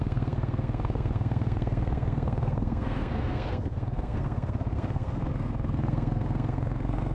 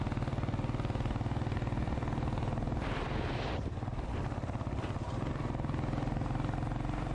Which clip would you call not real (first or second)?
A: first